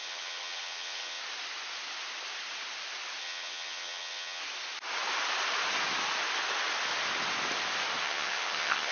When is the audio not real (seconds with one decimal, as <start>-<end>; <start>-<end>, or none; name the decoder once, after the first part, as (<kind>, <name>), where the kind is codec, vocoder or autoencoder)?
0.0-1.2 (vocoder, HiFi-GAN); 3.2-4.4; 8.0-8.9